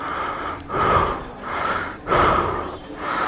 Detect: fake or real fake